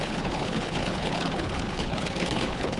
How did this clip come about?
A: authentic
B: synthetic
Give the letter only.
B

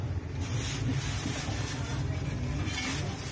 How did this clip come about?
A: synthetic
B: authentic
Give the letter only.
B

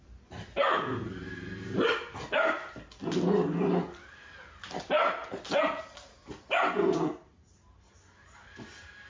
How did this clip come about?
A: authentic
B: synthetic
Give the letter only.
A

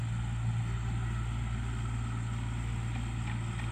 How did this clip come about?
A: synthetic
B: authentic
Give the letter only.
B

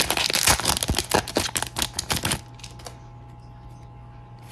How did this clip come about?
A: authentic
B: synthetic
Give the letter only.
A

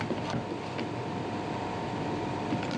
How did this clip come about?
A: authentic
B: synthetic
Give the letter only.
A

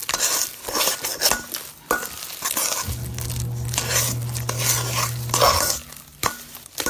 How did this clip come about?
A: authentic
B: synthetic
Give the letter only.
A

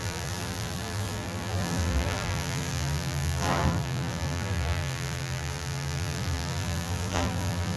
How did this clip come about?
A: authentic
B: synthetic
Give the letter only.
B